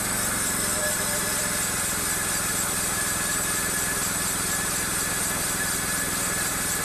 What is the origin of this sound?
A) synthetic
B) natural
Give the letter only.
A